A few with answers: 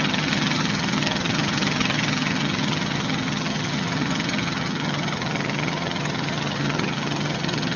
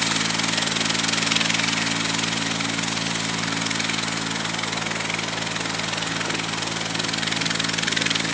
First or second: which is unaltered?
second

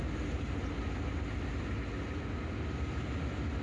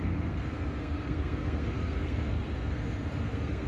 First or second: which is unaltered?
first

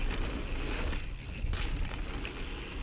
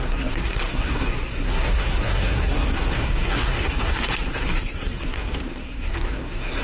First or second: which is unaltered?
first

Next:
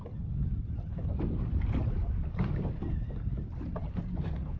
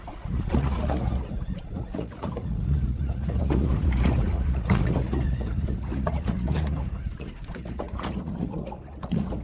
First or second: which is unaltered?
first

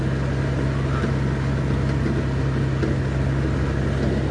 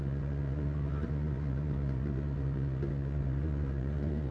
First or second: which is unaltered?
first